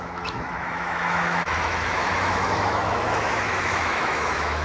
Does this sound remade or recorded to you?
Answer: remade